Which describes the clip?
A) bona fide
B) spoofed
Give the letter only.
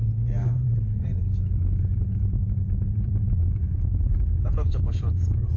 B